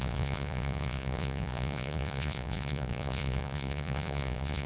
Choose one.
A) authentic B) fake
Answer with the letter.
B